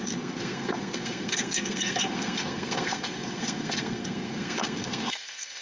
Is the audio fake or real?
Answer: fake